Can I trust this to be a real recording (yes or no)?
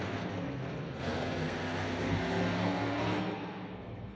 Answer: no